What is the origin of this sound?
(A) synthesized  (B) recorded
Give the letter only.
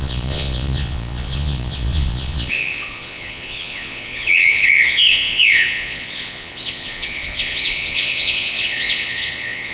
A